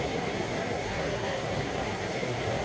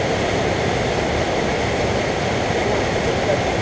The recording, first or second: second